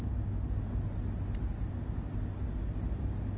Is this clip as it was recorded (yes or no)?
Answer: yes